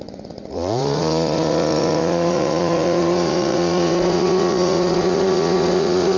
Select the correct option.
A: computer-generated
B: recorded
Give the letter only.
A